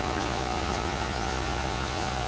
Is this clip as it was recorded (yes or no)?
no